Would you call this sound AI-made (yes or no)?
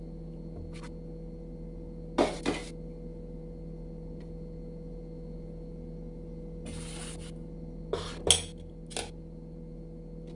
no